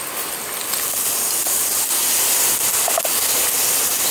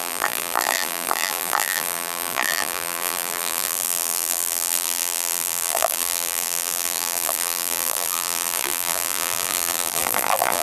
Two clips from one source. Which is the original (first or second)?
first